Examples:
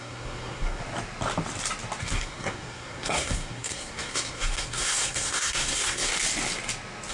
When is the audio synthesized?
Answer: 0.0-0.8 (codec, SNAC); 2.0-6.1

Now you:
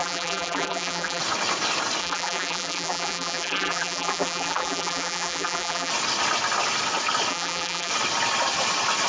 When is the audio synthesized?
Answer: 0.0-1.2 (vocoder, BigVGAN v2); 2.0-5.9; 7.3-7.9

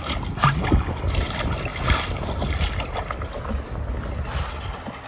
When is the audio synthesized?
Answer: none

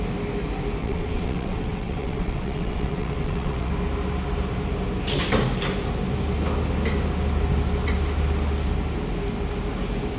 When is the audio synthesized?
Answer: 0.8-3.7 (vocoder, WaveNeXt)